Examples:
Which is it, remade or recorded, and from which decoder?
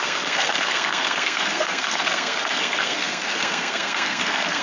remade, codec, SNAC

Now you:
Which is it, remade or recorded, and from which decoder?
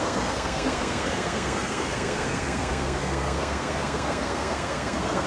remade, codec, SNAC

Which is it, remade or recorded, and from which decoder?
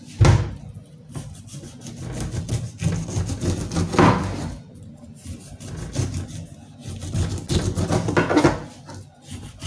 recorded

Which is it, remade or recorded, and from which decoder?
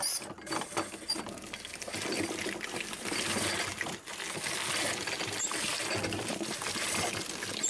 recorded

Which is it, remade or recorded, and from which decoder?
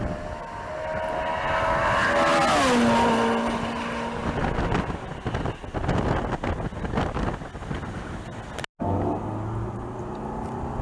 recorded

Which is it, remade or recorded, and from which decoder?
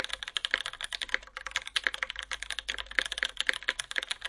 recorded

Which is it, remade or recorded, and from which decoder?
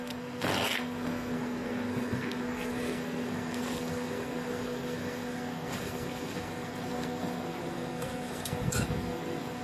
remade, codec, SNAC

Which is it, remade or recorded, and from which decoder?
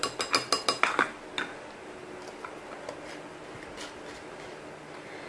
recorded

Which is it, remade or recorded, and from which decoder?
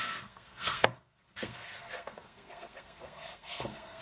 remade, codec, SNAC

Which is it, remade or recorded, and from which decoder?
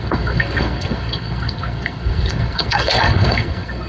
remade, codec, SNAC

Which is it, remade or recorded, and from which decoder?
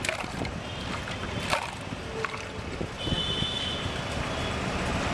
recorded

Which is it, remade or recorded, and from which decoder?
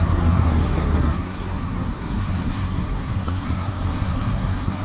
remade, codec, SNAC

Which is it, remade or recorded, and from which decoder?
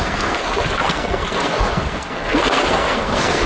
remade, codec, SNAC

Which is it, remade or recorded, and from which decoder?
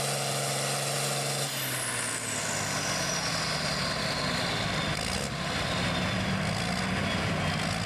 recorded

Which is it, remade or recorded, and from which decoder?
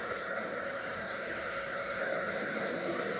remade, codec, SNAC